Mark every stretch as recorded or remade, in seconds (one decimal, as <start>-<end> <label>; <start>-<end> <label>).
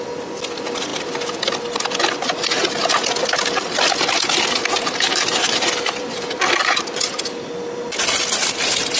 0.0-4.6 recorded; 4.6-7.0 remade; 7.0-9.0 recorded